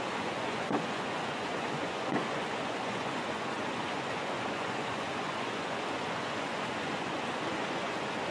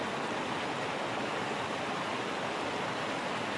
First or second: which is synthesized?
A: first